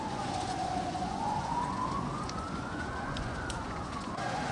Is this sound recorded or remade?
remade